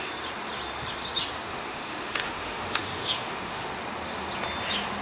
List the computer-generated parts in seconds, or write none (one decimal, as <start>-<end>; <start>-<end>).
1.5-3.7